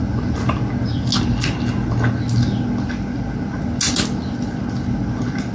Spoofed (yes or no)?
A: no